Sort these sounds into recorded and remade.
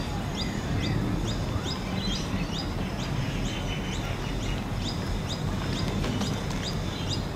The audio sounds recorded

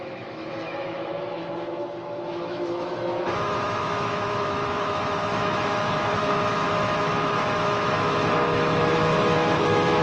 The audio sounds remade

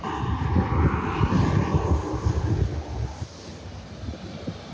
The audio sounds recorded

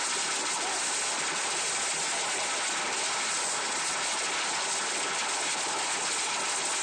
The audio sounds recorded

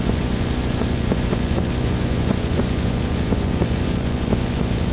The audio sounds remade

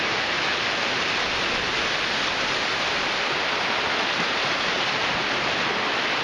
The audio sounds recorded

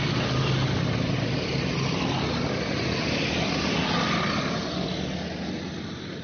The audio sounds recorded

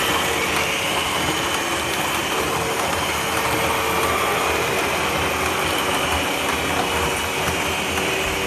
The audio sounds recorded